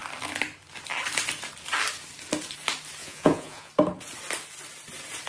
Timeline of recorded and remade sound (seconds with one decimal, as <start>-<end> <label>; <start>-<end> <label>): 0.0-3.0 recorded; 3.0-3.7 remade; 3.7-5.3 recorded